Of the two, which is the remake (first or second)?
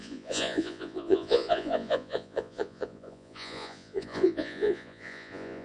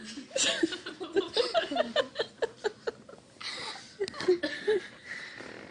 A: first